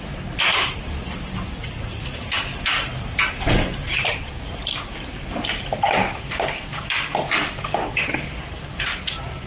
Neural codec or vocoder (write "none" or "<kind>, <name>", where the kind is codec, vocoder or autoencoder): none